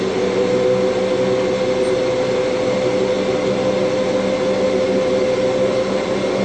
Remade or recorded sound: recorded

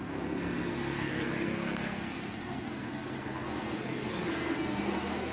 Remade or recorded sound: remade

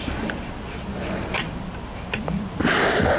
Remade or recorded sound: recorded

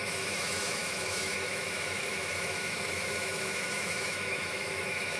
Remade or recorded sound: remade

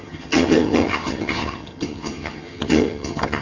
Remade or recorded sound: remade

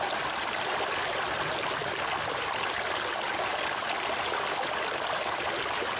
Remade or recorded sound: recorded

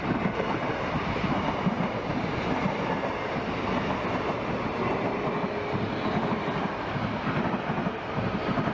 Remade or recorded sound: recorded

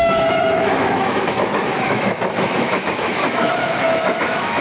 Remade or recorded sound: remade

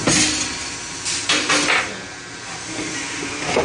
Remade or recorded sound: recorded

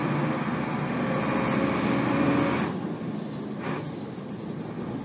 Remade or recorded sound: recorded